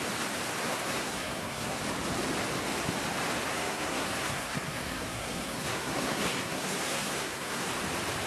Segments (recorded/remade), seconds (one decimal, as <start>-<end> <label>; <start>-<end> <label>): 0.0-0.6 recorded; 0.6-1.8 remade; 1.8-3.5 recorded; 3.5-7.7 remade; 7.7-8.3 recorded